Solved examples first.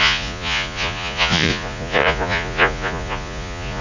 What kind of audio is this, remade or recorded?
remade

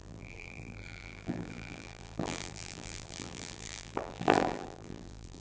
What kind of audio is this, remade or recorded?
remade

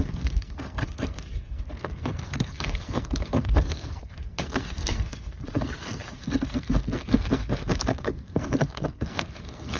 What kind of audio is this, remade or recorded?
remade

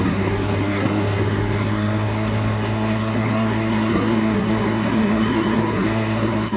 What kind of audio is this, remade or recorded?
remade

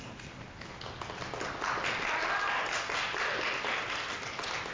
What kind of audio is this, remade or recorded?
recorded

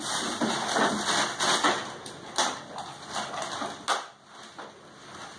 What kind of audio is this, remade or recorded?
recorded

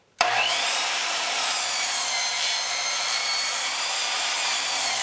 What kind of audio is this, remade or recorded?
remade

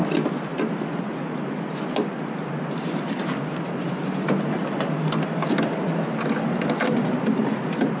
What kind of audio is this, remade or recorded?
recorded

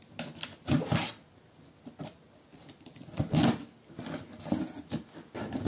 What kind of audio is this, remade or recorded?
recorded